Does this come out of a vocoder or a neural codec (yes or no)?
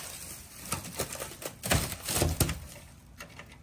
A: no